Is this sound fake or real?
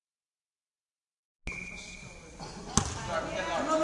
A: real